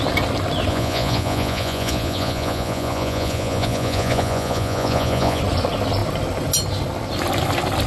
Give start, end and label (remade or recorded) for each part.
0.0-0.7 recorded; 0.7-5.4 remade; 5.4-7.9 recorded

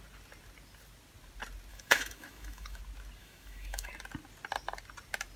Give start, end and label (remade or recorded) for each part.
0.0-1.7 recorded; 1.7-2.8 remade; 2.8-3.2 recorded; 3.2-3.9 remade; 3.9-5.4 recorded

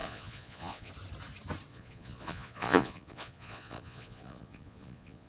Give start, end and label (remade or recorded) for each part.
0.0-0.9 remade; 0.9-1.7 recorded; 1.7-5.3 remade

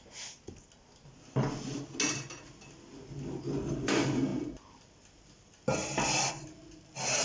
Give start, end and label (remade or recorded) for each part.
0.0-7.2 recorded

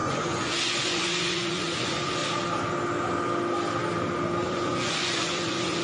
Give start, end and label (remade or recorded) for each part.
0.0-2.2 remade; 2.2-4.4 recorded; 4.4-5.8 remade

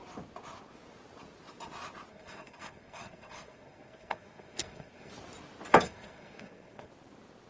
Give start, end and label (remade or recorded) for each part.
0.0-2.1 recorded; 2.1-5.1 remade; 5.1-5.7 recorded; 5.7-6.9 remade; 6.9-7.5 recorded

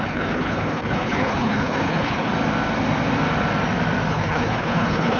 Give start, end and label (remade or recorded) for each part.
0.0-2.3 remade; 2.3-4.1 recorded; 4.1-5.2 remade

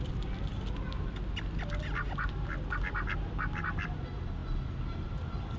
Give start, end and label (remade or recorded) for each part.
0.0-5.6 recorded